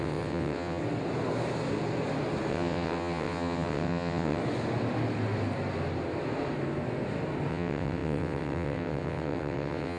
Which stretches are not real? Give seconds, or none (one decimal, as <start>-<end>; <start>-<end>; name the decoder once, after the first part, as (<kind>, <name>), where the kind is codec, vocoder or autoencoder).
0.0-0.8 (vocoder, WaveNeXt); 2.5-4.4; 7.5-10.0